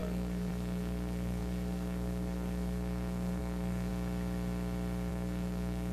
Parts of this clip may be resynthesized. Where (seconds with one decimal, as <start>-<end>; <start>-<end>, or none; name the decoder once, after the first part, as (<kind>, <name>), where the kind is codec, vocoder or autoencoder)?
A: 0.0-3.9 (codec, SNAC); 5.1-5.9